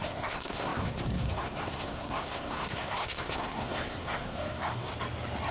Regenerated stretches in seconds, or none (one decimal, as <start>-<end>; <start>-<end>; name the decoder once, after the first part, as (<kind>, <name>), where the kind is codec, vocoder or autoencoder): 0.0-4.9 (codec, SNAC)